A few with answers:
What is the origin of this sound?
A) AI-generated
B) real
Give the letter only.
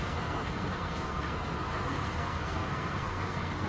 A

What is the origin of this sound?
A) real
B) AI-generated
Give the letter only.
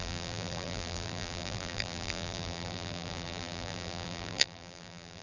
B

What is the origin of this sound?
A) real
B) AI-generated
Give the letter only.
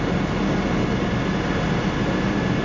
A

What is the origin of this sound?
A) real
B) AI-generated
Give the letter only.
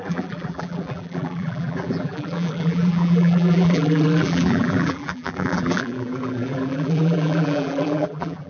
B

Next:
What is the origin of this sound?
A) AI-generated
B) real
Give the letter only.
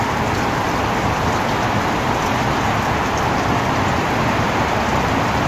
B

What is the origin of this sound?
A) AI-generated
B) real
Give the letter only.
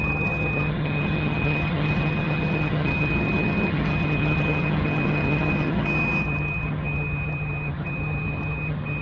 A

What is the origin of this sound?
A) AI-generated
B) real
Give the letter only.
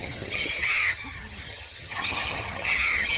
A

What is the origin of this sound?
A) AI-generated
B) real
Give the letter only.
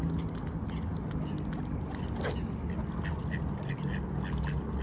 B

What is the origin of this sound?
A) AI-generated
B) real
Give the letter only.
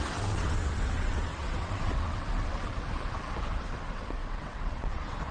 A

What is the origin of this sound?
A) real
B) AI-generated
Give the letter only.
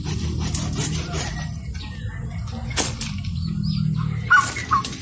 A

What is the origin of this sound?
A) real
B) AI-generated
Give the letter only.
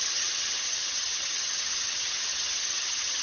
B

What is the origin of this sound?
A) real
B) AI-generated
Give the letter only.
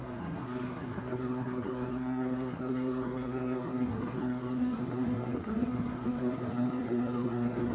B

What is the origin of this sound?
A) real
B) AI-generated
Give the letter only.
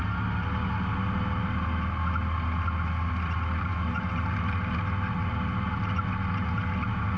A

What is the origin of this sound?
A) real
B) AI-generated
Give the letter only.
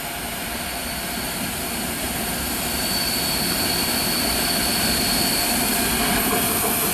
A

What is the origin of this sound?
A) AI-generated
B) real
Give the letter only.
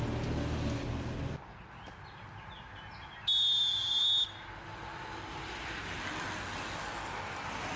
B